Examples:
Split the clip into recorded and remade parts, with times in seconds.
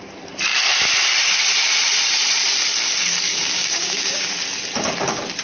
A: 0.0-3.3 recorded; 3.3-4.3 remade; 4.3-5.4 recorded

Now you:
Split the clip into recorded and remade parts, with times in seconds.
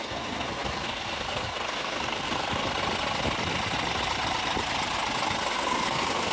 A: 0.0-2.6 remade; 2.6-5.5 recorded; 5.5-6.3 remade